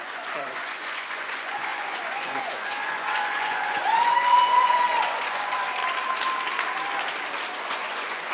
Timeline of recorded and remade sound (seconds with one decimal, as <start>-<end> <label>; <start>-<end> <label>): 0.0-5.8 remade; 5.8-7.5 recorded; 7.5-8.3 remade